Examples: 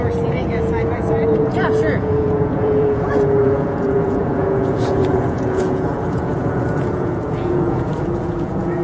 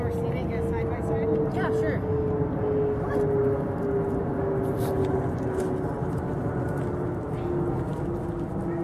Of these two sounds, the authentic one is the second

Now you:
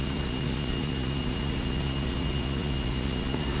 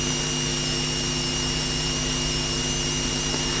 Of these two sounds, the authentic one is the second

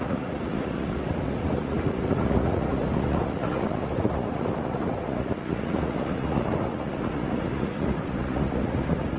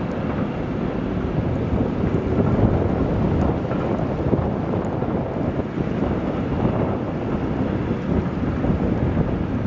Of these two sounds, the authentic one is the second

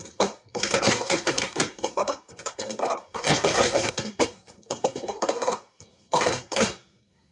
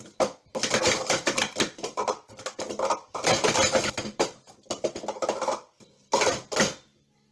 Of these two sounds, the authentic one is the second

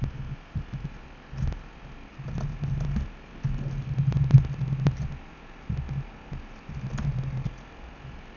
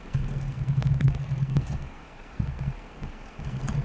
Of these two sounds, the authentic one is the first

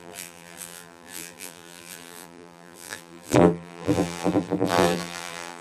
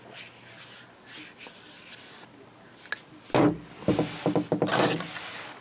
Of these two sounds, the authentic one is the second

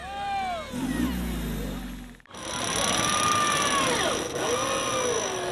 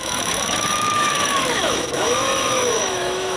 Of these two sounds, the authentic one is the first